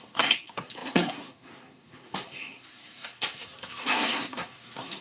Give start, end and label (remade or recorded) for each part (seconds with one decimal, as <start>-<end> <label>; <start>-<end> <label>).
0.0-5.0 remade